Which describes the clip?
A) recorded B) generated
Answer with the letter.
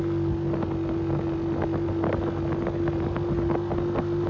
A